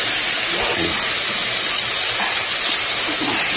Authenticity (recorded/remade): recorded